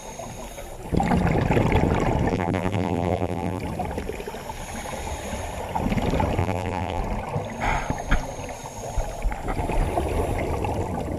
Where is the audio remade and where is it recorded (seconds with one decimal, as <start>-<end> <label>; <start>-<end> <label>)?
0.0-2.3 recorded; 2.3-3.6 remade; 3.6-6.4 recorded; 6.4-7.0 remade; 7.0-11.2 recorded